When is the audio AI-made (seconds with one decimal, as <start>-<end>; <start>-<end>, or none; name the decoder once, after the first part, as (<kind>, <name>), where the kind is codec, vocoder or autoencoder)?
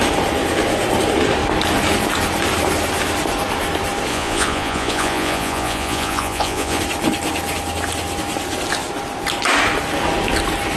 4.1-6.8 (vocoder, Vocos)